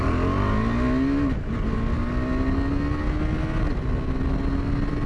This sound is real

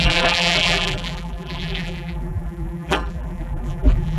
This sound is fake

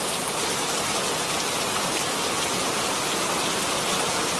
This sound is real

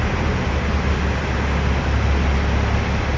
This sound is real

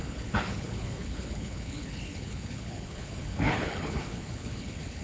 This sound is fake